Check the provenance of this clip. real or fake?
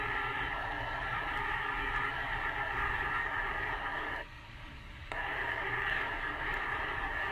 fake